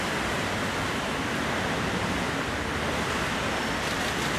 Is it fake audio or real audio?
real